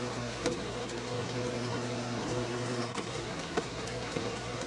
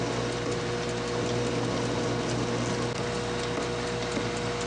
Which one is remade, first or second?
first